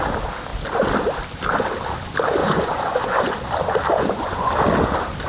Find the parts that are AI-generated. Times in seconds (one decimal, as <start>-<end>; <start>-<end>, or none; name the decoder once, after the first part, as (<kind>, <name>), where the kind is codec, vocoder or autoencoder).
2.4-3.3 (vocoder, Vocos); 3.9-4.5